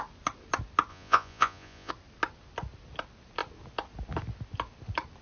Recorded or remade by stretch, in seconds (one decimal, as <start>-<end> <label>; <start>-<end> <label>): 0.0-0.9 recorded; 0.9-1.9 remade; 1.9-5.2 recorded